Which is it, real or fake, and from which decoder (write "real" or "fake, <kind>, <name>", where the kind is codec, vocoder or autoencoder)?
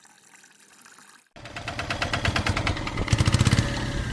real